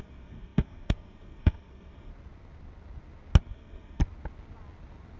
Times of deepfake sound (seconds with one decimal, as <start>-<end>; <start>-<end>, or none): 0.0-2.1; 3.4-4.0